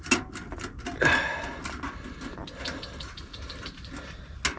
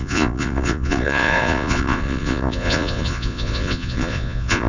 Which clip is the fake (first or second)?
second